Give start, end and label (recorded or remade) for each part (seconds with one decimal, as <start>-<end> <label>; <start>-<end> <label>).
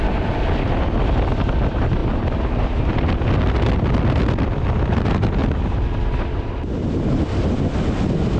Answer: 0.0-8.4 recorded